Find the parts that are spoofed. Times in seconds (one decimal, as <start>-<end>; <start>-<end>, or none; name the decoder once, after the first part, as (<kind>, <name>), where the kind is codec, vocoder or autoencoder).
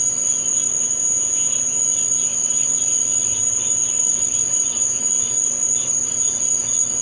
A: 1.0-1.5 (vocoder, Vocos)